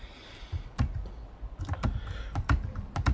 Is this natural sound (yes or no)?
yes